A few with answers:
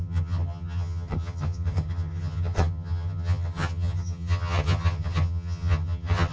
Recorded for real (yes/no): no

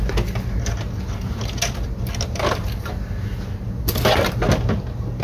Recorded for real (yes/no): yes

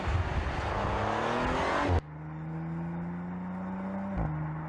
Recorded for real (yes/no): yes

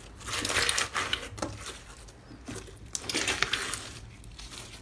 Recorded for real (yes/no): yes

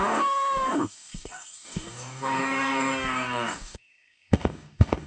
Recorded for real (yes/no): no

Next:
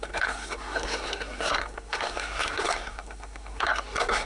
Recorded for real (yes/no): no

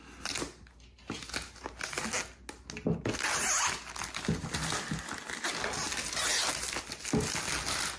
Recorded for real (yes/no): yes